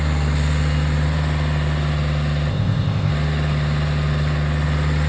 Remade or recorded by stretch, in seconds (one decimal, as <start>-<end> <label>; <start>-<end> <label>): 0.0-2.5 recorded; 2.5-3.1 remade; 3.1-5.1 recorded